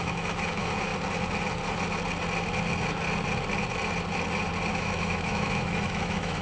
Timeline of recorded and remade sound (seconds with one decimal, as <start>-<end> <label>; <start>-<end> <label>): 0.0-0.9 remade; 0.9-4.7 recorded; 4.7-6.4 remade